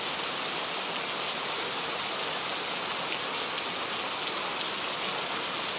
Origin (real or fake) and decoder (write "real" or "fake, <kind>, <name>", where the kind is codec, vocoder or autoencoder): real